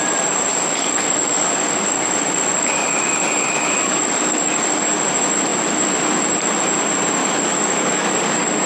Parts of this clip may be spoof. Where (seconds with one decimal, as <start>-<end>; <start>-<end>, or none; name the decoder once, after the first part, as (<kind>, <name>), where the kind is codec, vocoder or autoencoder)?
0.5-5.0 (codec, DAC); 7.2-8.7